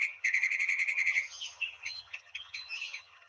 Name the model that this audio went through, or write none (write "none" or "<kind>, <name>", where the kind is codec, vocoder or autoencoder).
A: vocoder, HiFi-GAN